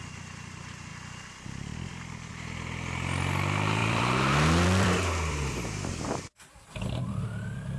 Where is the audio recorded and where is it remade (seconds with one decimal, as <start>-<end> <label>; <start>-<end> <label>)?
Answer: 0.0-3.8 recorded; 3.8-7.8 remade

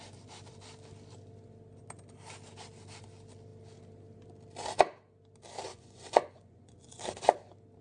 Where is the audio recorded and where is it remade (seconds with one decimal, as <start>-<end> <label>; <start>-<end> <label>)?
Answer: 0.0-5.7 recorded; 5.7-7.0 remade; 7.0-7.8 recorded

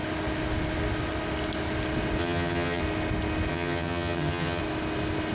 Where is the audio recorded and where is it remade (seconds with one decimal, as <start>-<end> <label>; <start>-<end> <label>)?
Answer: 0.0-2.2 recorded; 2.2-2.8 remade; 2.8-3.5 recorded; 3.5-4.6 remade; 4.6-5.3 recorded

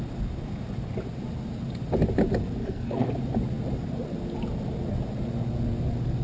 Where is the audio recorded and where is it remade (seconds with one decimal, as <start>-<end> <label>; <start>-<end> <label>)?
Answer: 0.0-2.6 recorded; 2.6-3.1 remade; 3.1-6.2 recorded

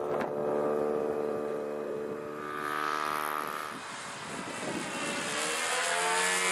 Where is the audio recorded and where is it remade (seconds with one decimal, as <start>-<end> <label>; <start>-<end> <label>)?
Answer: 0.0-6.5 recorded

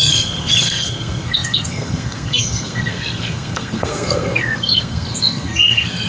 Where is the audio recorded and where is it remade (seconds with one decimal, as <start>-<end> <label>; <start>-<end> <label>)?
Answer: 0.0-6.1 remade